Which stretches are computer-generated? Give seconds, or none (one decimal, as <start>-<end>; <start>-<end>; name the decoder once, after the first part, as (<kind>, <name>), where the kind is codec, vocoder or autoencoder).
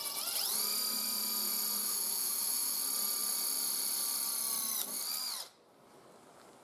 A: 1.8-2.8 (autoencoder, DAC-VAE)